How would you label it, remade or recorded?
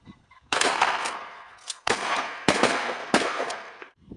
remade